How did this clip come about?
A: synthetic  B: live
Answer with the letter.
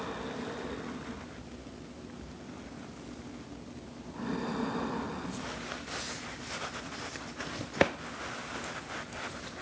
B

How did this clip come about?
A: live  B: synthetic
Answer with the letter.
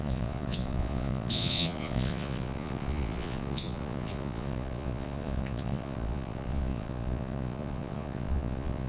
B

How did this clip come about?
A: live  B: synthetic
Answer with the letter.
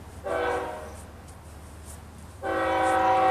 A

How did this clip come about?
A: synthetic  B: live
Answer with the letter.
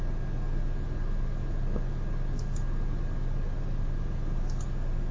B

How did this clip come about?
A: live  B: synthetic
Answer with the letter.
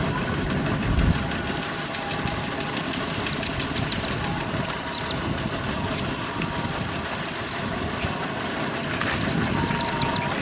A